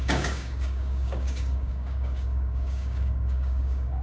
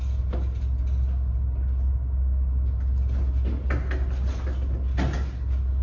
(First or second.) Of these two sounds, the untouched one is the second